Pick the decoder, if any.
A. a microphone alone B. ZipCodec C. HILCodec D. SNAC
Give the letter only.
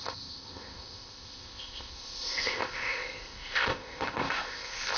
B